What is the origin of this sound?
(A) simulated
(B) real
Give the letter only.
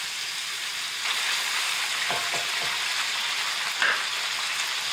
B